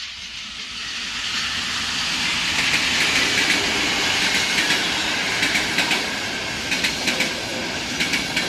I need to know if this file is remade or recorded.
recorded